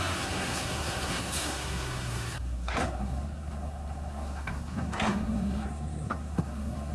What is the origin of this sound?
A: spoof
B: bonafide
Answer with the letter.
A